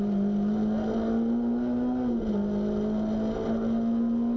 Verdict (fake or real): real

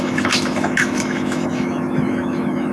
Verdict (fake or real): fake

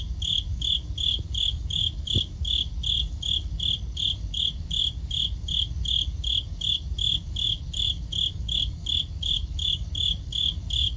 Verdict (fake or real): fake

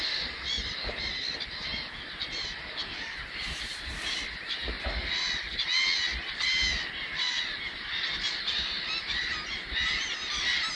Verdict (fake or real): real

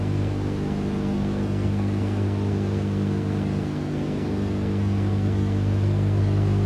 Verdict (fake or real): fake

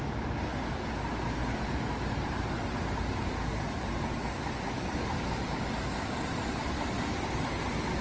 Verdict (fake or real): real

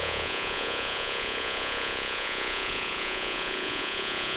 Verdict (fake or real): fake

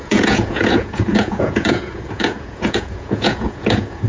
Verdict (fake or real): fake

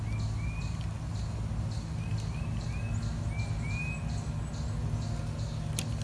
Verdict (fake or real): real